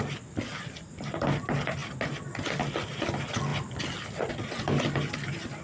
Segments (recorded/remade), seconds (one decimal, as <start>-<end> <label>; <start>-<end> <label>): 0.0-5.6 recorded